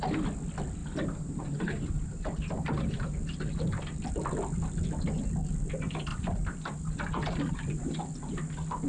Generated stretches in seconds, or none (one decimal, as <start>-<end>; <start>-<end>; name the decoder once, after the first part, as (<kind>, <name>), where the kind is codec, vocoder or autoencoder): 0.8-4.1 (vocoder, BigVGAN v2); 6.1-8.0